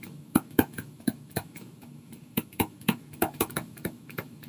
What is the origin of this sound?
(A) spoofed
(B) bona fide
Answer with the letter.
A